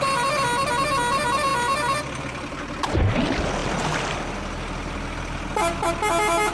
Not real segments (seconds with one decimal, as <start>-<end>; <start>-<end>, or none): none